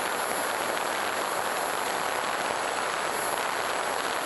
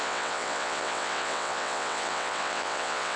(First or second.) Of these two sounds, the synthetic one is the second